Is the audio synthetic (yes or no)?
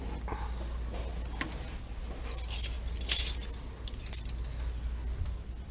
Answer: no